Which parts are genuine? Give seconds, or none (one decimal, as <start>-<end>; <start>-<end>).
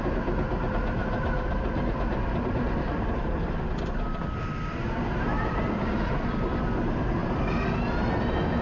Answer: none